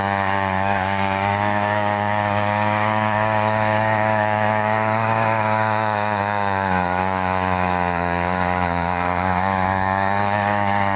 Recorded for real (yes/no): no